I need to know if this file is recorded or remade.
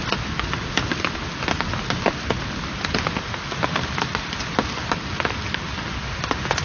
recorded